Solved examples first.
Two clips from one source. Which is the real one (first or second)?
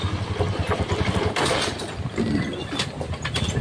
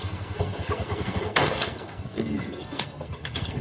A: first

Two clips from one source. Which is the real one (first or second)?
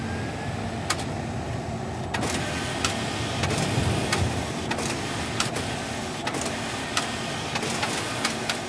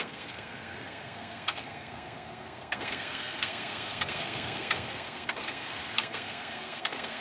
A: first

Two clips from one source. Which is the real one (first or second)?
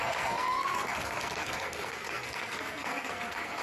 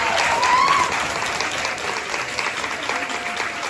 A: second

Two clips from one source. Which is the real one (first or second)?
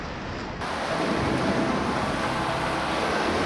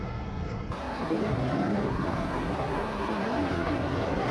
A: first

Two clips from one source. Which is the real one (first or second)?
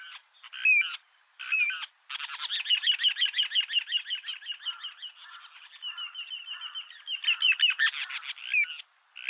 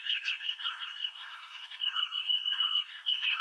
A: first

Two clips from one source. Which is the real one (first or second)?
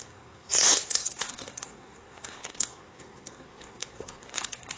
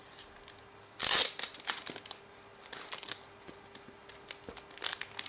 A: second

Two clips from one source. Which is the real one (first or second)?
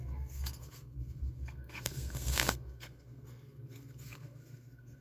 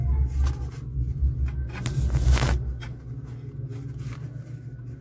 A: second